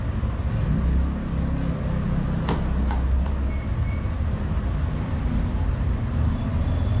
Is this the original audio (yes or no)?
yes